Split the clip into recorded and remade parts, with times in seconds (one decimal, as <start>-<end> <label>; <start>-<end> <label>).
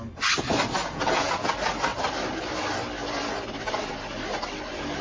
0.0-0.8 recorded; 0.8-1.5 remade; 1.5-5.0 recorded